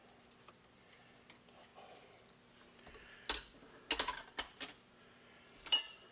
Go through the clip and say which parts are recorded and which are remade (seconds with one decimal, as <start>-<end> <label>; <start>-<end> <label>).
0.0-6.1 recorded

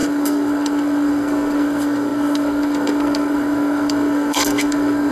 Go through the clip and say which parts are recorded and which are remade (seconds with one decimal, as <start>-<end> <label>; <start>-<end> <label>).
0.0-5.1 remade